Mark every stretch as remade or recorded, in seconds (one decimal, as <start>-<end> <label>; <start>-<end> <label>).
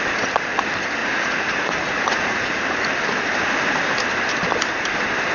0.0-1.0 recorded; 1.0-2.6 remade; 2.6-5.3 recorded